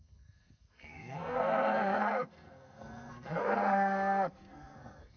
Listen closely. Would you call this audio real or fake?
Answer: fake